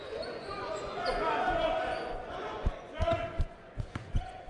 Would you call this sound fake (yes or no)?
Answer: yes